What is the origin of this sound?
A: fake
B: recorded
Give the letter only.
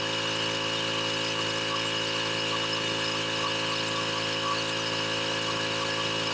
B